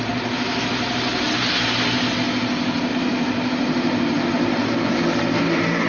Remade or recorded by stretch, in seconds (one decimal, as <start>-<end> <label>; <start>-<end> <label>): 0.0-2.9 recorded; 2.9-5.9 remade